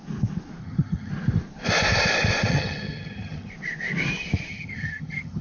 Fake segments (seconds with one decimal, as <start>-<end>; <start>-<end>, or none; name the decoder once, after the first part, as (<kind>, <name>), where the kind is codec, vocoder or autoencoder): 0.6-1.1 (vocoder, HiFi-GAN); 2.5-3.5; 4.5-5.4